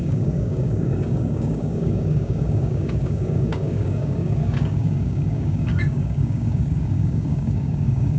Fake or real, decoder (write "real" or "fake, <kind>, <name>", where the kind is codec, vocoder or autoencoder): fake, codec, DAC